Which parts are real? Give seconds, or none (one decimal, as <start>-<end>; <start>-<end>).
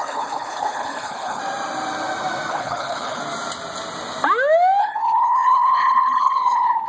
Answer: 1.4-2.5; 3.2-4.8